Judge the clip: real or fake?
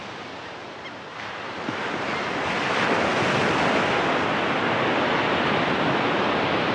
real